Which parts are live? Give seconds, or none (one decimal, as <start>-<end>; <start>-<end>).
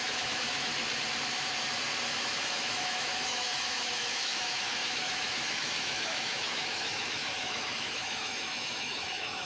0.7-2.1